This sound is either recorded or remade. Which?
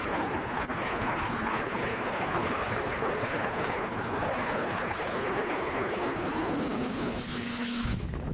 remade